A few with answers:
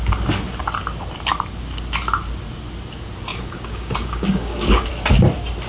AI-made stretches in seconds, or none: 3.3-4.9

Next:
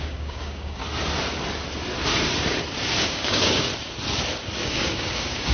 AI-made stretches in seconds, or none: 0.0-0.8; 3.0-3.7; 4.6-5.5

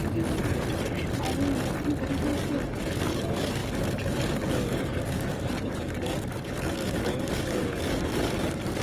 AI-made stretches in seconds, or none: 2.1-8.8

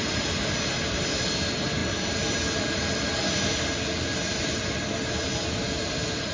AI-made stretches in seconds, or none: none

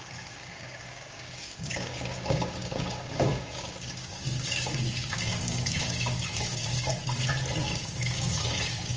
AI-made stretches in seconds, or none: 0.0-6.9; 7.6-9.0

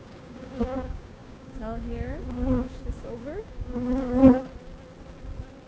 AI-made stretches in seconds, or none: 0.0-4.2